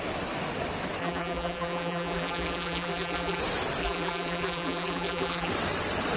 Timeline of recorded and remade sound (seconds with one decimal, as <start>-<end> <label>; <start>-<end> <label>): 0.0-1.0 recorded; 1.0-3.4 remade; 3.4-3.8 recorded; 3.8-5.5 remade; 5.5-6.2 recorded